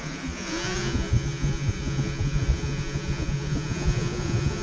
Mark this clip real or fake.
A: fake